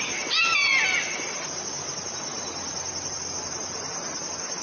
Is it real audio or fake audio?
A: real